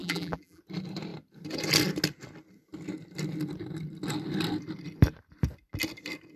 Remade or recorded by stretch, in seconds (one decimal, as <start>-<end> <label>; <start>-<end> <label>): 0.0-0.6 remade; 0.6-6.4 recorded